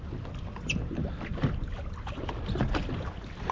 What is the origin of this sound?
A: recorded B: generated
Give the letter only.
A